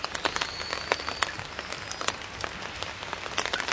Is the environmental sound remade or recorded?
recorded